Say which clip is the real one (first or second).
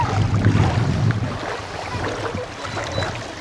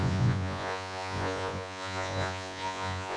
first